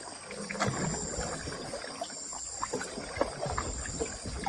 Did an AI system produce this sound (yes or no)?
no